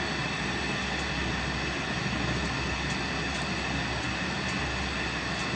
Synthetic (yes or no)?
no